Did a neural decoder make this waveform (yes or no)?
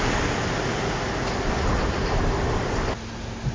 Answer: no